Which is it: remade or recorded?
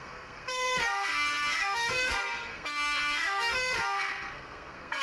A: remade